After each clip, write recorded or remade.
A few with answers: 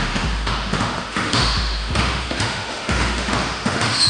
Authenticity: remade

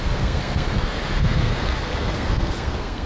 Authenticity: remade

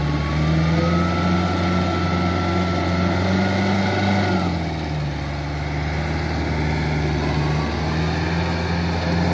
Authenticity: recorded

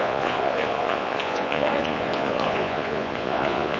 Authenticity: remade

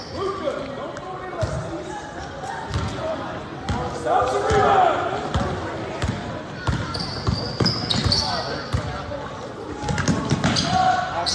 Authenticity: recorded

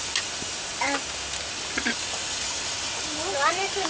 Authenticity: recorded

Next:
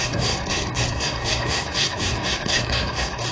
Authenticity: remade